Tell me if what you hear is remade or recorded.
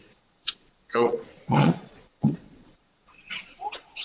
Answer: remade